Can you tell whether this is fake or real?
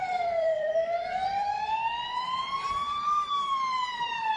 fake